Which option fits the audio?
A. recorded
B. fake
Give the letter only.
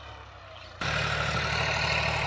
A